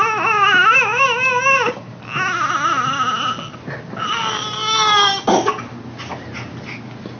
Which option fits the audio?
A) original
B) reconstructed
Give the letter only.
A